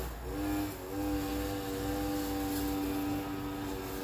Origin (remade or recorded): recorded